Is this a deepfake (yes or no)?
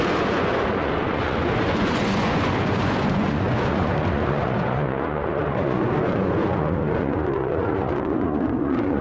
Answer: yes